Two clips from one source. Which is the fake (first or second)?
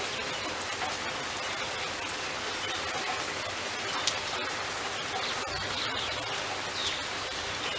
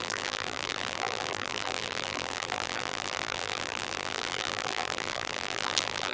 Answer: second